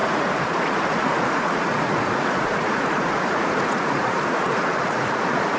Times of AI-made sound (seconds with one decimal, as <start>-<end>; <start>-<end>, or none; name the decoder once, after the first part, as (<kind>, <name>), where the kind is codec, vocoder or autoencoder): 0.0-5.6 (vocoder, Vocos)